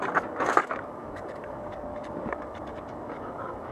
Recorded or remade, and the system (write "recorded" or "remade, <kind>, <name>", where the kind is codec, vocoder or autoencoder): remade, codec, DAC